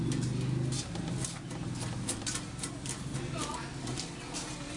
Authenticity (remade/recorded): recorded